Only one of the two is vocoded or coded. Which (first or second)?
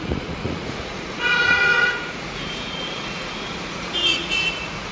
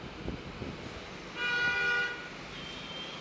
first